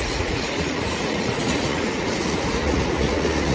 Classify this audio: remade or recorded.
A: remade